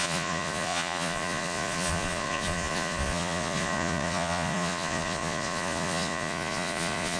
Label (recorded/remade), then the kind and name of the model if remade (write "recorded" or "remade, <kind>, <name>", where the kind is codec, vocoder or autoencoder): remade, vocoder, Vocos